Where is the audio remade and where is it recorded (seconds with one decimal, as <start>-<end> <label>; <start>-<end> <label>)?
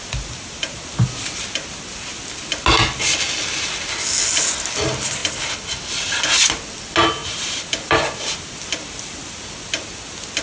0.0-7.2 recorded; 7.2-8.5 remade; 8.5-10.4 recorded